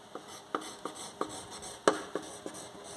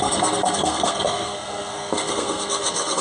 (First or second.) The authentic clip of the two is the first